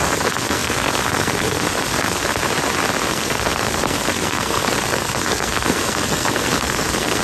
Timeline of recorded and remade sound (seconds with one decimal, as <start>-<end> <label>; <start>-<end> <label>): 0.0-2.4 remade; 2.4-3.1 recorded; 3.1-7.2 remade